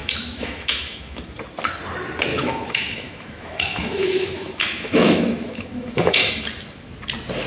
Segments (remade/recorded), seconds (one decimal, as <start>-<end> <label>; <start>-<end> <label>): 0.0-1.2 remade; 1.2-2.3 recorded; 2.3-6.3 remade; 6.3-7.5 recorded